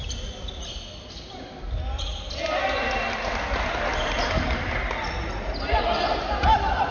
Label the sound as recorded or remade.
recorded